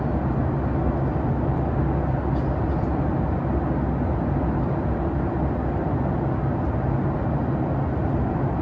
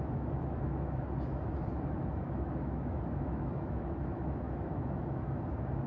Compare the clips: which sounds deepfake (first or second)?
second